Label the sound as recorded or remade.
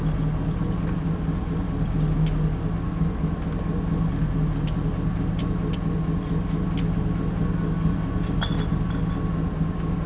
recorded